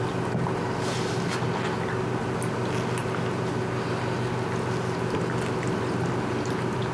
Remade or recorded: recorded